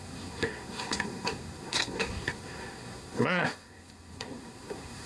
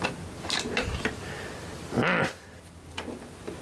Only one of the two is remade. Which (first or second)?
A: first